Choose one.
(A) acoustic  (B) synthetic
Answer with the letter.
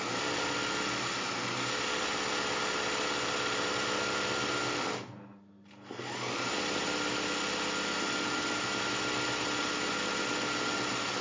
A